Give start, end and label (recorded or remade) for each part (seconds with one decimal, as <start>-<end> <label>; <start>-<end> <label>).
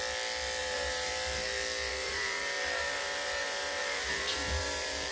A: 0.0-0.6 recorded; 0.6-1.1 remade; 1.1-1.9 recorded; 1.9-5.1 remade